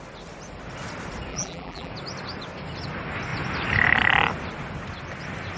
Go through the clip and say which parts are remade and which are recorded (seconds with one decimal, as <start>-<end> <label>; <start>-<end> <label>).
0.0-1.3 recorded; 1.3-1.9 remade; 1.9-5.6 recorded